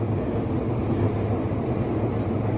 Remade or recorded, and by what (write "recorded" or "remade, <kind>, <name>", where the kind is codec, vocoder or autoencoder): recorded